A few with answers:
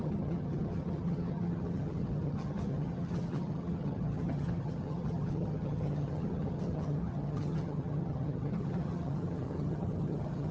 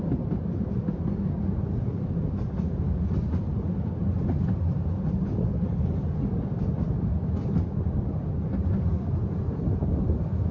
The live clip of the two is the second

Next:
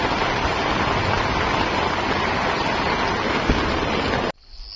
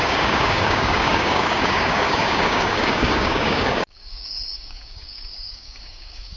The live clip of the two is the first